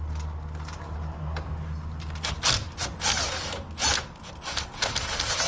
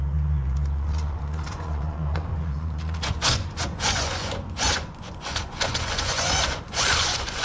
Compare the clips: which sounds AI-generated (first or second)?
second